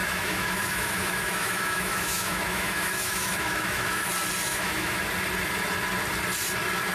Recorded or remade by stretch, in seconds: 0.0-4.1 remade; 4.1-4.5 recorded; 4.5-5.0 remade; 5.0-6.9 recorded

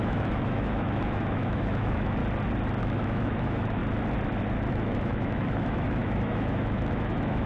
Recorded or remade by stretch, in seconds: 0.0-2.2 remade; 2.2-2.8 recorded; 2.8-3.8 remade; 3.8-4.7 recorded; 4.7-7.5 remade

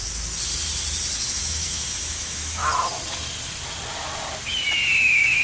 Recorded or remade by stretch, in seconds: 0.0-1.3 recorded; 1.3-2.6 remade; 2.6-5.0 recorded; 5.0-5.4 remade

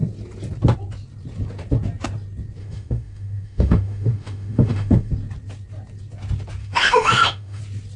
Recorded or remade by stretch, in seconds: 0.0-2.6 recorded; 2.6-5.1 remade; 5.1-6.6 recorded; 6.6-7.6 remade; 7.6-8.0 recorded

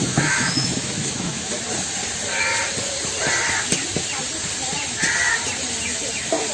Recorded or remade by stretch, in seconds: 0.0-1.5 remade; 1.5-6.5 recorded

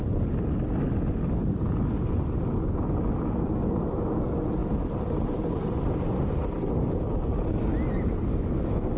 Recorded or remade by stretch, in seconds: 0.0-8.3 recorded; 8.3-9.0 remade